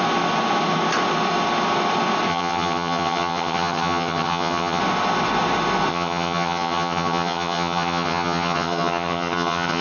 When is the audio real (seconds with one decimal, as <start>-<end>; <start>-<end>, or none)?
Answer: 0.0-2.3; 4.8-5.9